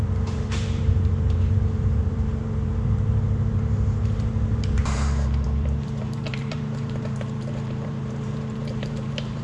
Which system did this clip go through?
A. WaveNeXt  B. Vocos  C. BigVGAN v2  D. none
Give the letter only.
C